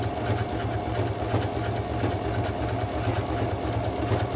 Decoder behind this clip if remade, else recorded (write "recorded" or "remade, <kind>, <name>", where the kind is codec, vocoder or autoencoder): recorded